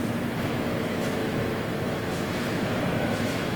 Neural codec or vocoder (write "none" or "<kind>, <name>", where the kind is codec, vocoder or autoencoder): autoencoder, DAC-VAE